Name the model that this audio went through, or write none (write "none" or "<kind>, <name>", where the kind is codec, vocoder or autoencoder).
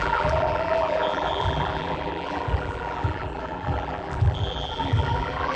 vocoder, BigVGAN v2